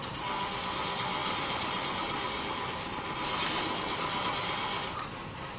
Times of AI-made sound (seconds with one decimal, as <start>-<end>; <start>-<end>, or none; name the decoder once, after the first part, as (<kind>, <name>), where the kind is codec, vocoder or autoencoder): 1.2-4.5 (vocoder, BigVGAN v2)